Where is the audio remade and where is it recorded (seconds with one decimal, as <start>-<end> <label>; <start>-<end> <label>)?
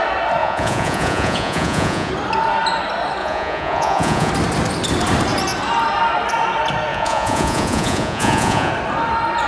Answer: 0.0-0.4 recorded; 0.4-2.1 remade; 2.1-3.2 recorded; 3.2-4.3 remade; 4.3-6.9 recorded; 6.9-8.7 remade; 8.7-9.5 recorded